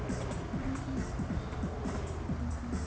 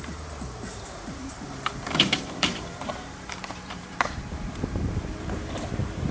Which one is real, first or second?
first